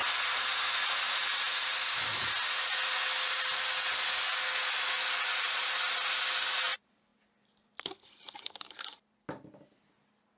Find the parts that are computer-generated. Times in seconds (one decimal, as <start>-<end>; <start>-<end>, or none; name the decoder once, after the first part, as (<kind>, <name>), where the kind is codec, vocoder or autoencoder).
none